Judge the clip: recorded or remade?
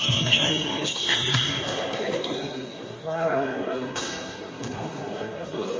remade